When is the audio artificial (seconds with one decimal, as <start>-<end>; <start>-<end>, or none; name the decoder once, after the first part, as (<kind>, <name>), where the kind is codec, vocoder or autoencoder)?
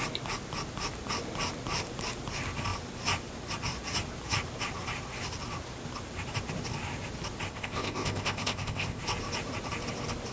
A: 7.5-9.0 (codec, ZipCodec)